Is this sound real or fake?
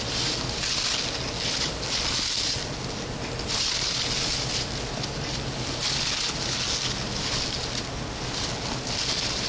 real